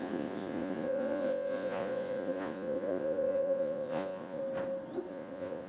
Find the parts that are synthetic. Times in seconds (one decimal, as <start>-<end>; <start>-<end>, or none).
0.0-4.4; 5.1-5.7

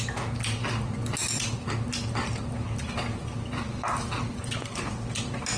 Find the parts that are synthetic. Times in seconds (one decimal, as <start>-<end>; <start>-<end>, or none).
none